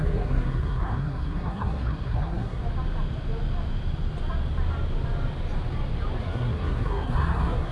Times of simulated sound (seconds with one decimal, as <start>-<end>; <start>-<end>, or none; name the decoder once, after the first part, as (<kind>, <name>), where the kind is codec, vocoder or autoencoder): 0.0-2.6 (codec, SNAC); 6.2-7.7